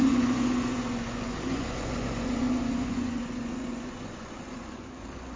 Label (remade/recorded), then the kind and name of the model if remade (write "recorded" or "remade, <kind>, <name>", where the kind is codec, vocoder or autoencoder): remade, vocoder, Vocos